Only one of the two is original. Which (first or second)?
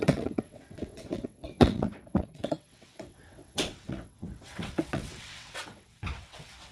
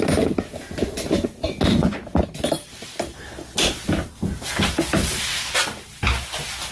second